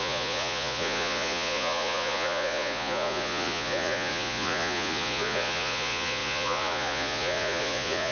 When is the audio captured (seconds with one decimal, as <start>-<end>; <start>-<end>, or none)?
none